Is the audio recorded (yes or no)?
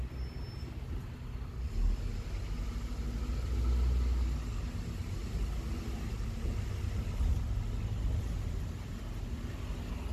yes